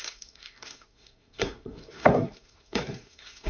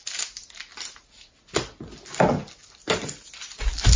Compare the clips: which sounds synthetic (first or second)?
first